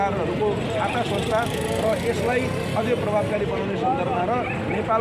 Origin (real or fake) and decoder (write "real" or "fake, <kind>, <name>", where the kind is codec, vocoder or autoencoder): real